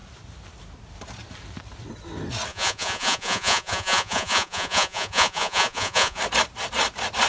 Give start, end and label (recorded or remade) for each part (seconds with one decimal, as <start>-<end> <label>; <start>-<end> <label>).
0.0-2.5 recorded; 2.5-6.2 remade; 6.2-7.3 recorded